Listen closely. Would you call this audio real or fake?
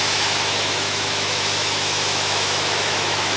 fake